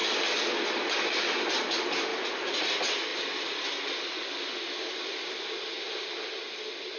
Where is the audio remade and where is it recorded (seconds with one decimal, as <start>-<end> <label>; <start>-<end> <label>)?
0.0-7.0 recorded